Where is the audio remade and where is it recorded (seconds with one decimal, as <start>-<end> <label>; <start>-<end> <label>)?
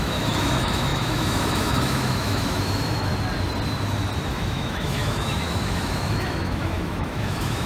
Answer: 0.0-3.1 remade; 3.1-4.3 recorded; 4.3-7.7 remade